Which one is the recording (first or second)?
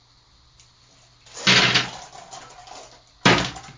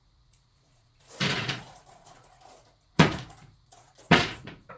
first